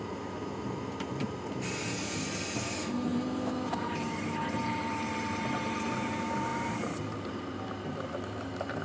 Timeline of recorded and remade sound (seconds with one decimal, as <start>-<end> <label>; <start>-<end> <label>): 0.0-8.8 remade